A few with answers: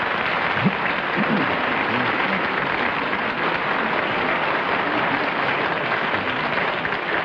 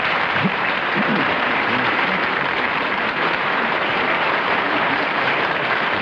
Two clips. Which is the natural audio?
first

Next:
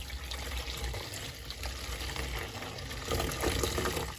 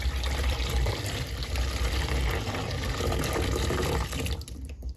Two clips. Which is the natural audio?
first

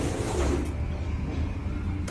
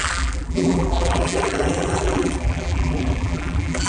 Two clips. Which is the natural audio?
first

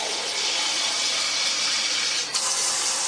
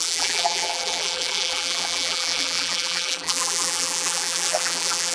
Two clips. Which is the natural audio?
first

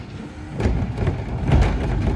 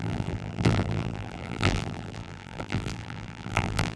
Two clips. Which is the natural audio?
first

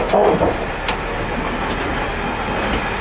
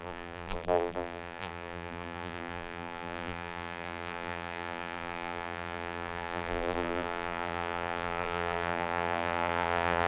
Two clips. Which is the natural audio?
first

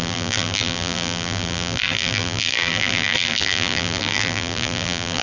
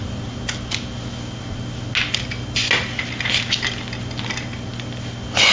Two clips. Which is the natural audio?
second